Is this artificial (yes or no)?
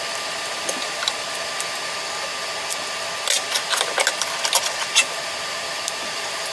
no